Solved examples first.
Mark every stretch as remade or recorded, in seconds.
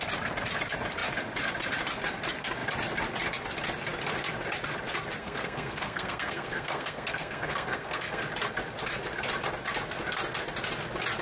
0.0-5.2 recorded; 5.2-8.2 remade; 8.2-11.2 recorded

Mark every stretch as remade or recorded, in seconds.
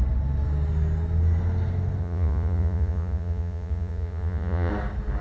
0.0-2.0 recorded; 2.0-4.7 remade; 4.7-5.2 recorded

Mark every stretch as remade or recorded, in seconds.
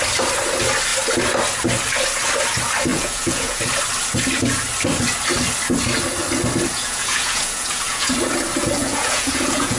0.0-2.9 recorded; 2.9-3.6 remade; 3.6-6.7 recorded; 6.7-8.1 remade; 8.1-8.8 recorded; 8.8-9.8 remade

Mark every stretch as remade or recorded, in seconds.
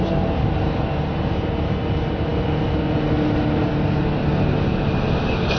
0.0-5.6 recorded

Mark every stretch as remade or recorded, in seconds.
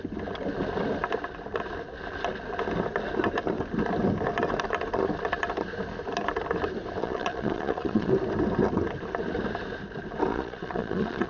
0.0-7.0 recorded; 7.0-8.1 remade; 8.1-10.3 recorded; 10.3-11.3 remade